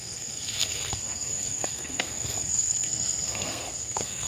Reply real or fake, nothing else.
fake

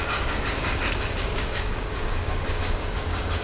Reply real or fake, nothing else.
fake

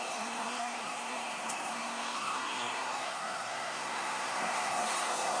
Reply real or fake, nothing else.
fake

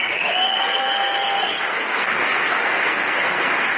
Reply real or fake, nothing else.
fake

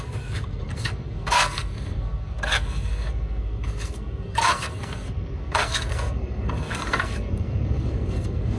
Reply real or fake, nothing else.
fake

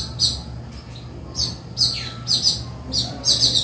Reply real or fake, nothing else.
real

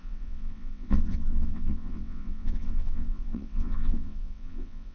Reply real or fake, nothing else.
fake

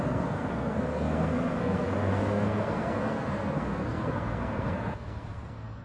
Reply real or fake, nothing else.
fake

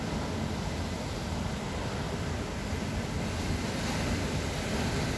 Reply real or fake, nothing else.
real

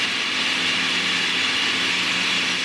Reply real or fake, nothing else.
real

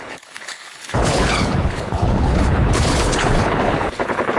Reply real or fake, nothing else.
fake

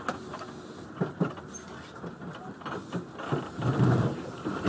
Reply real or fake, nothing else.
real